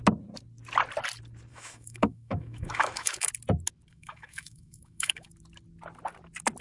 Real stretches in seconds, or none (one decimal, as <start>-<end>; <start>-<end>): 0.0-1.5; 3.3-3.9; 5.3-6.6